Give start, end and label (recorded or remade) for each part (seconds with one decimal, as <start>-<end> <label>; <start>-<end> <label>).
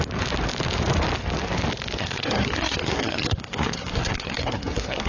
0.0-2.0 recorded; 2.0-5.1 remade